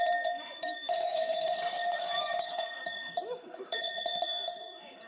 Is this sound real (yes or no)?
no